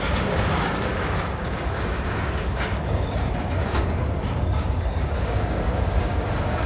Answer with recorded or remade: remade